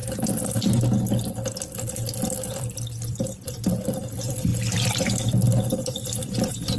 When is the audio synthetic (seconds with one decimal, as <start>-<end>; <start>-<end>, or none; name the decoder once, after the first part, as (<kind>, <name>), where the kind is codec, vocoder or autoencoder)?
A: 1.9-6.8 (vocoder, BigVGAN v2)